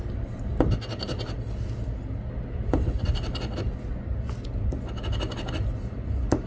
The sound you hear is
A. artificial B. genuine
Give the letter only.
B